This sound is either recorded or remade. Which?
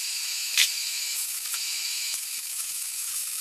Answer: remade